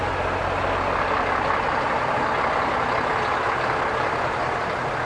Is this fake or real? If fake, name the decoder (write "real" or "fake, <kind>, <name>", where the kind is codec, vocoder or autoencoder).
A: real